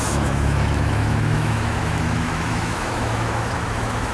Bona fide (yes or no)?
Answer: no